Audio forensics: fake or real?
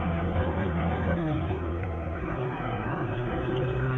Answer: fake